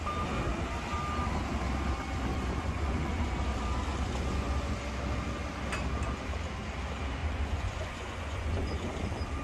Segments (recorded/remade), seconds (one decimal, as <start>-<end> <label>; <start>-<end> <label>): 0.0-2.3 recorded; 2.3-3.4 remade; 3.4-3.9 recorded; 3.9-4.8 remade; 4.8-7.2 recorded; 7.2-8.9 remade; 8.9-9.4 recorded